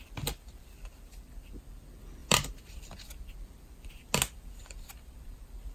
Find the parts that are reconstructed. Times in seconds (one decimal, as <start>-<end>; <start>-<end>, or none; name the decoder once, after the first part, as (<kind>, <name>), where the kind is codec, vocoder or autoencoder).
2.2-2.7 (vocoder, BigVGAN v2)